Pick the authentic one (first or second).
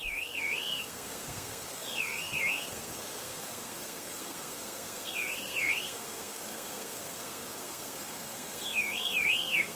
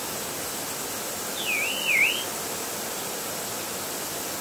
second